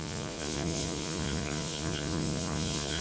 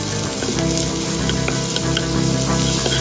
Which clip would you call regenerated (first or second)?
first